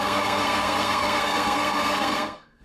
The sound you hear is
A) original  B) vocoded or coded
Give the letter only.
B